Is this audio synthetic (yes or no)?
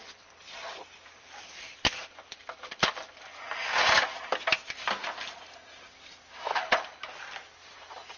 no